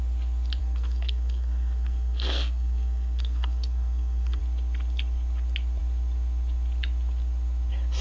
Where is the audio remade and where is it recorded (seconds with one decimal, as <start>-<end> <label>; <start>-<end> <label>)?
0.0-0.6 recorded; 0.6-4.4 remade; 4.4-8.0 recorded